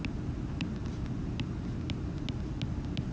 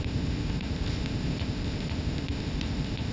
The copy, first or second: second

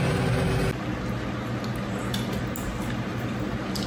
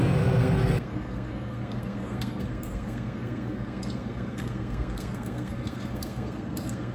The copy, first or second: second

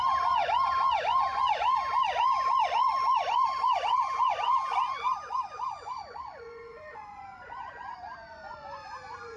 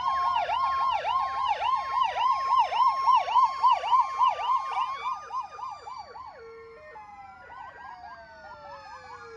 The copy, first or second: first